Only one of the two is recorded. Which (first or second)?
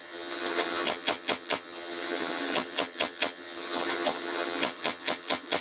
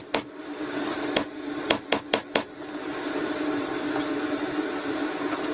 second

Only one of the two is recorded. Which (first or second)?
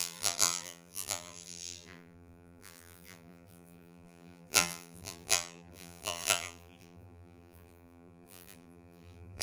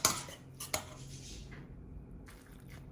second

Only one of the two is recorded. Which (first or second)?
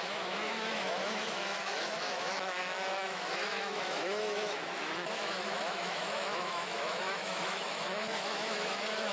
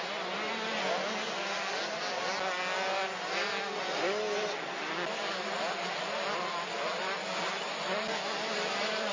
second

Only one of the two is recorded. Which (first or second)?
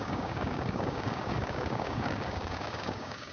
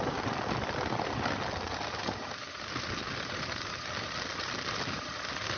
second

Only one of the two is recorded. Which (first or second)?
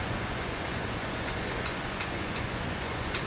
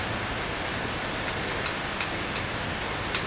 second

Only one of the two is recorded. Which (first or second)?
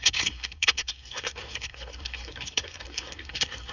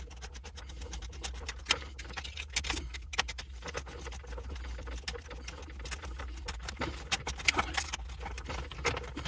second